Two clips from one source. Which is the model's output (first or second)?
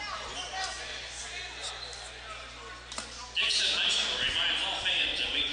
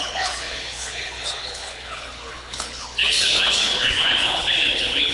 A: second